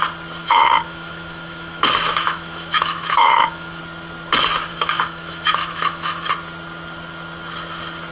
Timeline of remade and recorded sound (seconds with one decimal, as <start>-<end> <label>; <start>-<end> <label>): 0.0-0.4 recorded; 0.4-3.8 remade; 3.8-4.7 recorded; 4.7-6.3 remade; 6.3-8.1 recorded